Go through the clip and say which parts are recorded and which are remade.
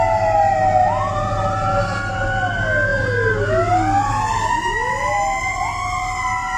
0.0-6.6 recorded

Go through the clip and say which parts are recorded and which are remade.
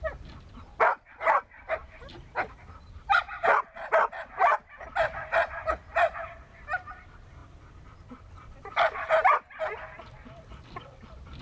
0.0-11.4 remade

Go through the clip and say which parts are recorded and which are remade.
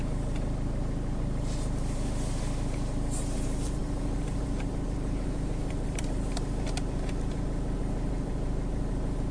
0.0-9.3 remade